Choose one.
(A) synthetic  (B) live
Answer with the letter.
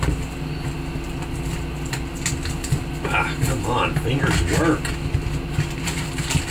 B